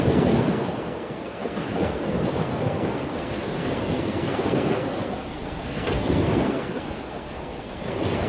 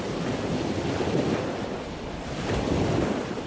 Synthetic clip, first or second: first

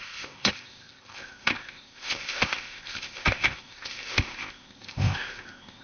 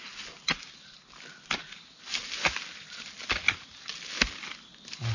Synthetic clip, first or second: first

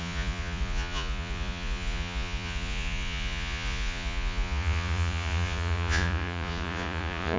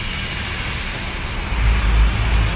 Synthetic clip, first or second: first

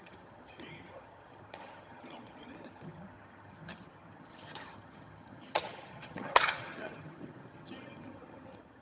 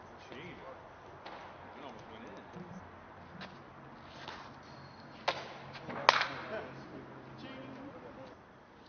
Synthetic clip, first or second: first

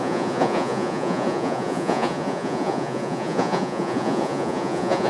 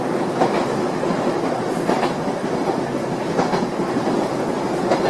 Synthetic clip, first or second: first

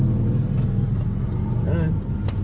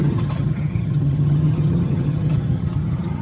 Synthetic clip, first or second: second